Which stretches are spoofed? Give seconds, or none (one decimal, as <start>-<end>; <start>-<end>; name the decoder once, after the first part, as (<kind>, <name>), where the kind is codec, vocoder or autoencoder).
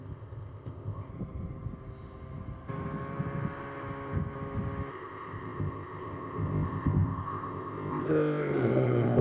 0.0-1.1 (codec, ZipCodec); 4.9-9.2